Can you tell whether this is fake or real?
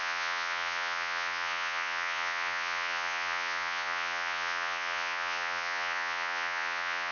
fake